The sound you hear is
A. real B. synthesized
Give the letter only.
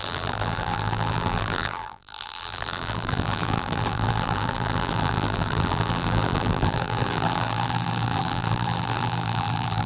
B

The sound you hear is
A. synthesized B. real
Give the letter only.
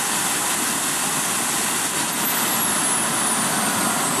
B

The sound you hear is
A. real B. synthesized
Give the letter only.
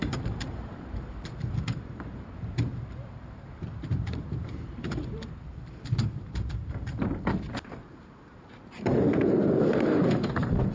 B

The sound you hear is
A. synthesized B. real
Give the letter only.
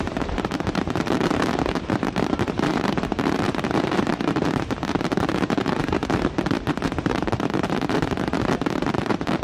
A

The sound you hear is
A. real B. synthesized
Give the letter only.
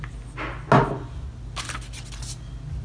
A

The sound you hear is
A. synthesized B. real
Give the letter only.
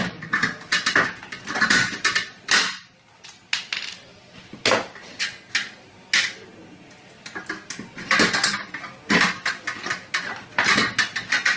B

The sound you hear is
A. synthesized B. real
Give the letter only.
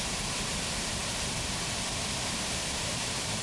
A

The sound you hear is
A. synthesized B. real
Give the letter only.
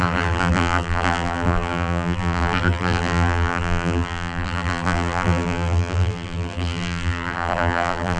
A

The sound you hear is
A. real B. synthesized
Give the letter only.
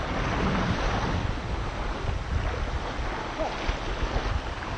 A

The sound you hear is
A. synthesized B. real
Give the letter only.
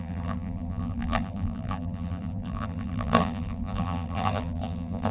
A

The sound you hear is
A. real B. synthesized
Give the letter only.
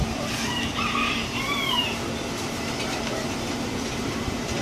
B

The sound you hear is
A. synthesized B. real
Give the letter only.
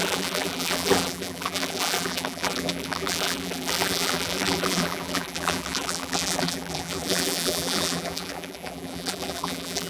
A